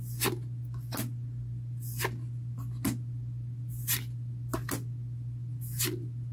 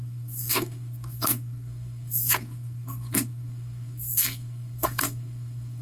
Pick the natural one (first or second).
first